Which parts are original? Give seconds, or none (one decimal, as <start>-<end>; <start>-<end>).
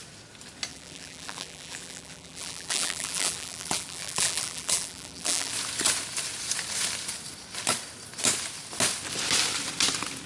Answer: 0.0-0.7; 5.5-10.3